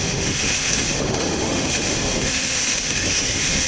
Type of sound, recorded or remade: remade